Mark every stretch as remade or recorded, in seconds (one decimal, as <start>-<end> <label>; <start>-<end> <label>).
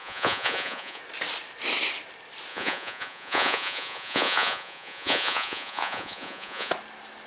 0.0-1.0 remade; 1.0-2.5 recorded; 2.5-6.7 remade; 6.7-7.3 recorded